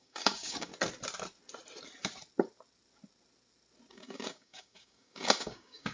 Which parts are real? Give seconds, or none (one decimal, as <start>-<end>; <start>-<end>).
0.7-3.9